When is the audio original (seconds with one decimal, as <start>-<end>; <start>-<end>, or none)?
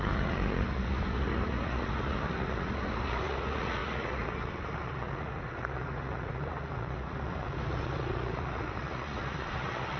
none